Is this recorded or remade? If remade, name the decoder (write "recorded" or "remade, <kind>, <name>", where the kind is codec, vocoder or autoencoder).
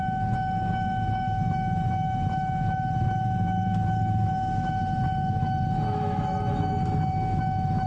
remade, autoencoder, DAC-VAE